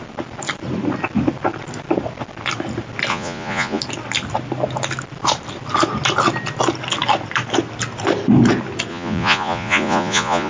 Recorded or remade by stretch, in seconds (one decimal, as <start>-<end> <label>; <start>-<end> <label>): 0.0-3.1 recorded; 3.1-3.8 remade; 3.8-8.9 recorded; 8.9-10.5 remade